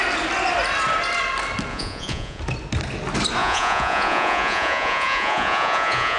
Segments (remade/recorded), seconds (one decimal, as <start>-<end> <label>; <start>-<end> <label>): 0.0-1.7 recorded; 1.7-2.4 remade; 2.4-3.4 recorded; 3.4-6.2 remade